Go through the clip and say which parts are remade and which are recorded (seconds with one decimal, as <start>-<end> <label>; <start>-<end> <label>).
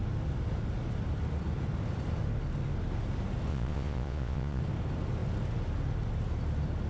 0.0-3.5 recorded; 3.5-4.6 remade; 4.6-6.9 recorded